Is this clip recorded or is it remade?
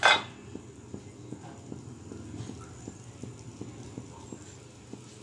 recorded